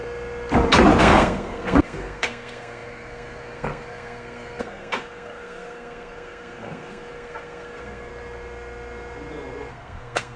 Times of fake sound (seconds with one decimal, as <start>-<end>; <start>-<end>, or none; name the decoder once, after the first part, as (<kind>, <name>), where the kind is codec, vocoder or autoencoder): 1.0-8.1 (codec, SNAC); 9.7-10.4